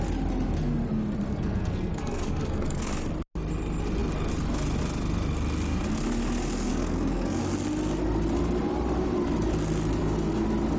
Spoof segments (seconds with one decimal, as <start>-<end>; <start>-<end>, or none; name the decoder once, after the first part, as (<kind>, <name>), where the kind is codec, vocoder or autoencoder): 1.3-2.9 (codec, SNAC); 6.7-7.4